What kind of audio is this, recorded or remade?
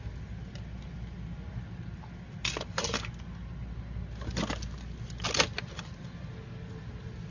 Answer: recorded